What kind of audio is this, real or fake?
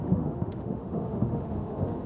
fake